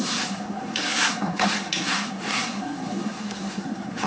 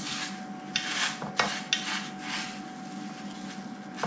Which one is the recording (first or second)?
second